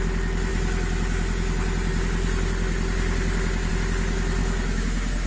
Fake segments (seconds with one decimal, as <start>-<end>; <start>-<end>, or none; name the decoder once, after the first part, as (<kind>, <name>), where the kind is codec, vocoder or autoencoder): 4.4-5.3 (autoencoder, DAC-VAE)